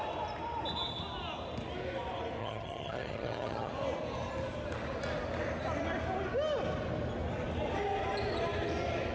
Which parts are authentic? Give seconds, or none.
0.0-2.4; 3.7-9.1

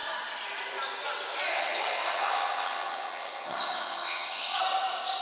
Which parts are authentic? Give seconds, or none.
0.0-1.5; 4.6-5.2

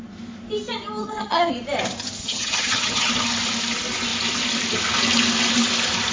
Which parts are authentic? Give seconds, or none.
0.0-1.0; 1.5-2.2; 3.1-6.1

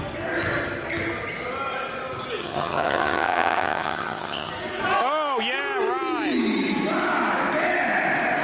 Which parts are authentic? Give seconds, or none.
0.0-2.4; 4.5-8.4

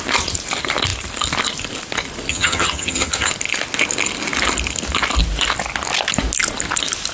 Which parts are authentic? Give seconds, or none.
0.0-2.3; 3.3-7.1

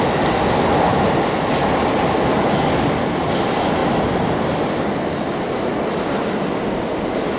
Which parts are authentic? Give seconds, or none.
0.0-7.4

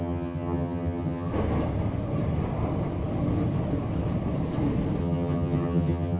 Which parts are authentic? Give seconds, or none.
1.3-5.0